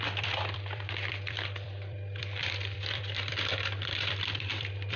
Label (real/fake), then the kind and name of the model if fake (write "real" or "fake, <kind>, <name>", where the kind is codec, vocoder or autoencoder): fake, vocoder, BigVGAN v2